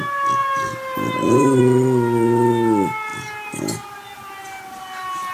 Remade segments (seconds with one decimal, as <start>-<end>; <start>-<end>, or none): 0.4-1.6; 3.1-4.6